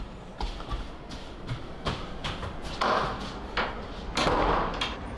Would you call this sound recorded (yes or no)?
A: yes